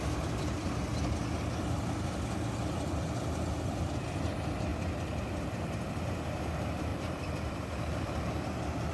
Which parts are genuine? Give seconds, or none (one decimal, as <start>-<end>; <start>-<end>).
0.0-6.9; 8.0-8.9